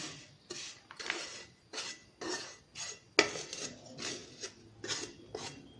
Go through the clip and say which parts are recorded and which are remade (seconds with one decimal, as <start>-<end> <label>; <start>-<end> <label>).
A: 0.0-5.8 recorded